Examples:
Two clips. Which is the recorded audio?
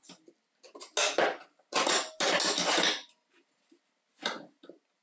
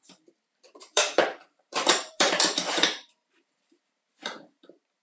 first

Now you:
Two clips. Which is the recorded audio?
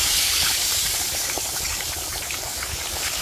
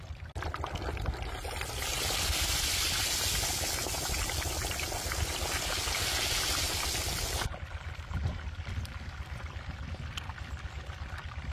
second